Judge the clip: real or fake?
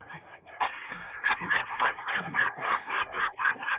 fake